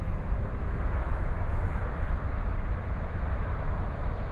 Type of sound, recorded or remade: remade